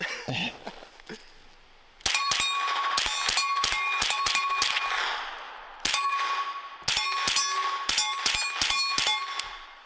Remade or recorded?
recorded